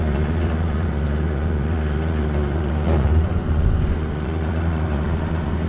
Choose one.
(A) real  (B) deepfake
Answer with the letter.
B